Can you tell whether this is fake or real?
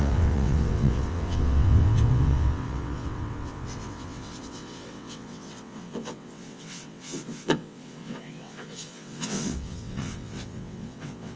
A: fake